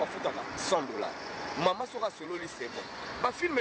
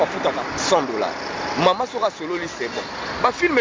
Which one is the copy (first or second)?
first